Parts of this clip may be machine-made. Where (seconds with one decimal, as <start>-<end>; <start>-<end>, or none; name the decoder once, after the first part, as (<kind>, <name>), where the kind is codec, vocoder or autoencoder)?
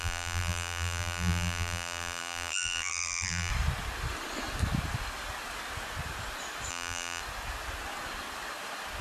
0.0-3.5 (vocoder, BigVGAN v2); 6.7-7.2